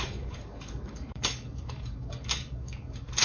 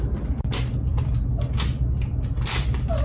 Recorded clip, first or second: second